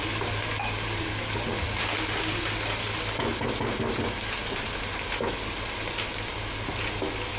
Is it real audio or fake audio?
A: real